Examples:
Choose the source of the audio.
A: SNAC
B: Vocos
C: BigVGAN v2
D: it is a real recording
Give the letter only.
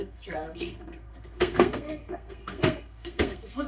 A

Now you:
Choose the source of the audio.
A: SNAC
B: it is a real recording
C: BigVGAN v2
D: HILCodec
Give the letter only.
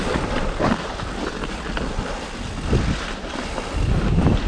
B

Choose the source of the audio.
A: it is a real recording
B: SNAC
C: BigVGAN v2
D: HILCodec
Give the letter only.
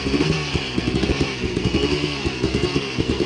B